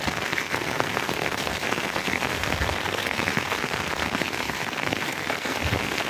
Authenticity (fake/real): fake